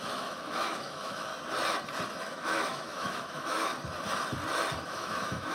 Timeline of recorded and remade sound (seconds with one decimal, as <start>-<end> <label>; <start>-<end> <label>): 0.0-1.3 remade; 1.3-2.1 recorded; 2.1-3.7 remade; 3.7-4.8 recorded; 4.8-5.5 remade